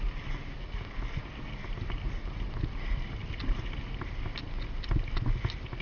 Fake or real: real